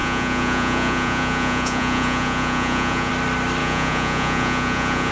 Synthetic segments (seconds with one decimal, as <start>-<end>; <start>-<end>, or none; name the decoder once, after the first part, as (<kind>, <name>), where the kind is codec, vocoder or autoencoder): 0.0-3.1 (vocoder, Vocos); 3.6-5.1